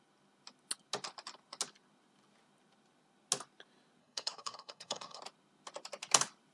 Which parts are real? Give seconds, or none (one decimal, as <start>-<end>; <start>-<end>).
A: 0.0-4.0; 5.2-6.5